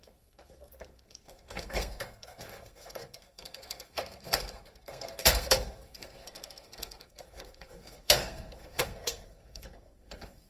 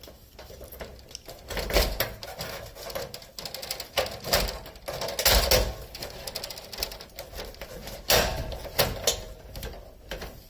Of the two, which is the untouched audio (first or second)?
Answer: second